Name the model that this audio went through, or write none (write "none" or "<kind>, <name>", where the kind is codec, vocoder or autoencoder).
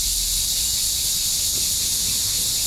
none